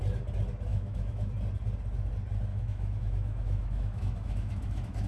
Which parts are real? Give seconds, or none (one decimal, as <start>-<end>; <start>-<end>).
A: 0.0-0.7; 1.3-2.5

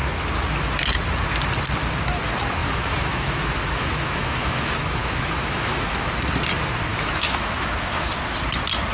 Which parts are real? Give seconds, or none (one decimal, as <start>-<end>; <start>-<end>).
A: 0.0-2.6; 6.1-6.9; 8.1-8.9

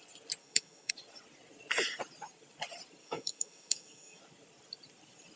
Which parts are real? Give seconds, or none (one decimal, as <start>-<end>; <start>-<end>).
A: 0.0-0.4; 0.9-3.0; 4.2-5.4

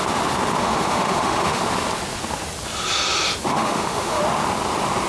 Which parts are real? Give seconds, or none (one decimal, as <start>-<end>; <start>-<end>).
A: 0.0-0.6; 1.6-3.5; 4.2-5.1

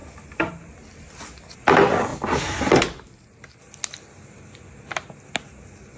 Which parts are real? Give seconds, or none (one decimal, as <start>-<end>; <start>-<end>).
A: 0.0-6.0

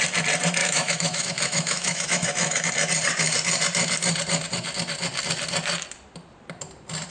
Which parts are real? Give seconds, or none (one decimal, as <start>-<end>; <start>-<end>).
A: 0.0-0.6; 2.7-7.1

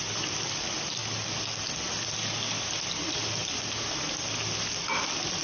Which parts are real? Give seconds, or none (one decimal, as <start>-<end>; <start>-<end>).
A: 0.0-5.4